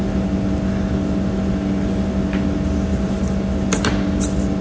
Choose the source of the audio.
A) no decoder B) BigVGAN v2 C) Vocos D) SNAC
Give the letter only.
A